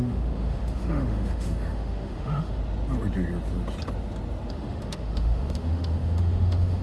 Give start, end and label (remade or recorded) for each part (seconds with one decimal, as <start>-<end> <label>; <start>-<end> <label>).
0.0-2.6 remade; 2.6-4.5 recorded; 4.5-6.8 remade